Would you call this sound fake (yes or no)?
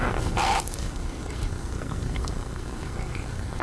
yes